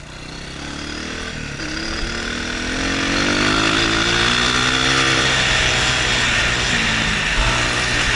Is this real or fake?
real